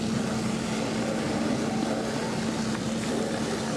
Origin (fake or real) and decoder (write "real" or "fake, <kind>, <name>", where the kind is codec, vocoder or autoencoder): real